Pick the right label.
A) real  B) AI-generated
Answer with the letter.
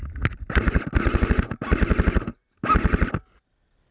A